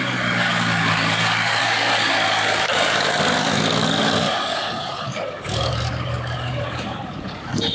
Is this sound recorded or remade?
remade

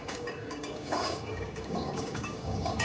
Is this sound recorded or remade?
remade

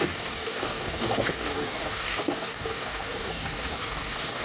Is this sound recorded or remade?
remade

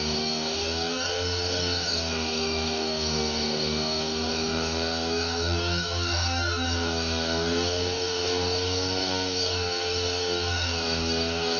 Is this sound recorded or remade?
remade